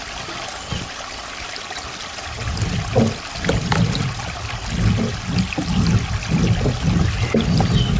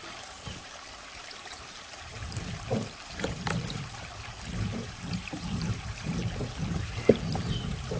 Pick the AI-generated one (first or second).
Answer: second